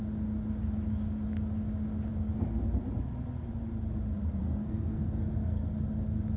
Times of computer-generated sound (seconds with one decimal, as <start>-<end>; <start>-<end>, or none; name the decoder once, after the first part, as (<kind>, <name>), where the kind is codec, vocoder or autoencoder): 4.4-5.7 (codec, SNAC)

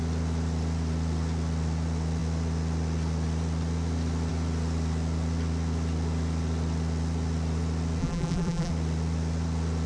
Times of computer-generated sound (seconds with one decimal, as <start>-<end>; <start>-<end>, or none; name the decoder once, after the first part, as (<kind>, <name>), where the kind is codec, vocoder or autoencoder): 8.0-8.7 (vocoder, BigVGAN v2)

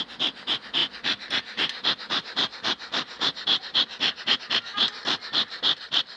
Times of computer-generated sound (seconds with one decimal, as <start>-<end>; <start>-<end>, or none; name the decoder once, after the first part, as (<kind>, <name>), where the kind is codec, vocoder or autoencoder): none